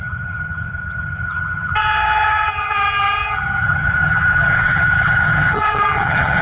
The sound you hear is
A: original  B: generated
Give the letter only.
B